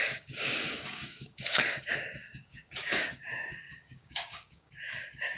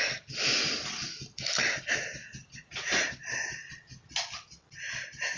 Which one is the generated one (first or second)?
first